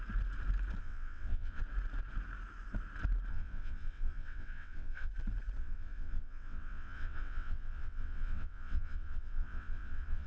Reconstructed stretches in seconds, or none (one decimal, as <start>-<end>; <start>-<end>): 0.8-1.6; 3.3-5.1; 5.6-10.3

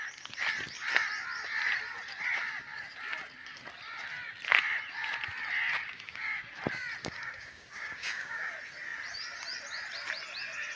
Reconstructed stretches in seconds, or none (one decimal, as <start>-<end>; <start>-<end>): 5.9-6.5; 7.0-8.5

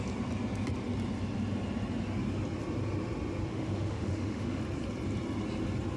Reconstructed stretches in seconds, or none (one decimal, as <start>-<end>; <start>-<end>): 3.5-4.6

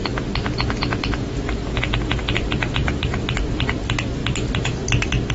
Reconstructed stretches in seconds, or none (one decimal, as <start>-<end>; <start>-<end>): 1.0-5.3